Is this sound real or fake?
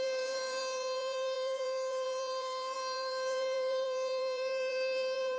fake